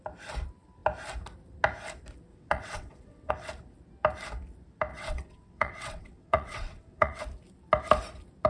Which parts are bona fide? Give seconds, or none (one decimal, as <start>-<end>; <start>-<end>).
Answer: 0.0-2.3; 3.3-4.9; 7.2-8.5